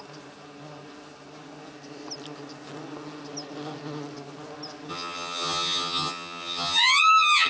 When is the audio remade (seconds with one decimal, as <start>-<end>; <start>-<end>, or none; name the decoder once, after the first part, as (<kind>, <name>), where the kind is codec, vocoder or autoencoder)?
4.9-7.5 (vocoder, HiFi-GAN)